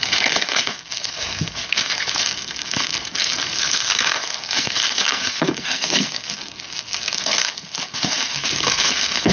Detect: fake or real fake